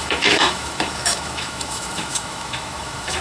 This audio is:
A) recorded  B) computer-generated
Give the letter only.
B